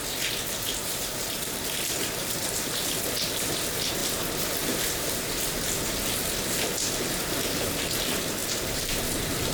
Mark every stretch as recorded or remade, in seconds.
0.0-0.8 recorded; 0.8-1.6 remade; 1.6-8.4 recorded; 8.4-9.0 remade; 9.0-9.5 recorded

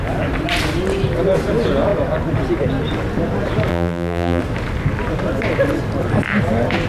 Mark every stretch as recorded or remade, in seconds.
0.0-3.7 recorded; 3.7-4.4 remade; 4.4-6.9 recorded